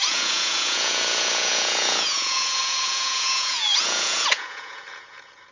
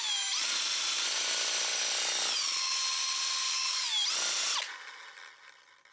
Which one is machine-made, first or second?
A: first